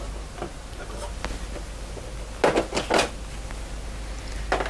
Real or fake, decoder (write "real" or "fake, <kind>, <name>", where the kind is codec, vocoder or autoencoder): real